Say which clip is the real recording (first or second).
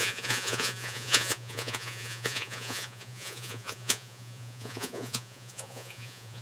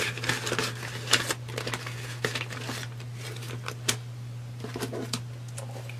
second